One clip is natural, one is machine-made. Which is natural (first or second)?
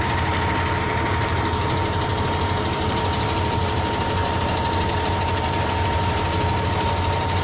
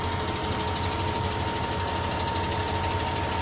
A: second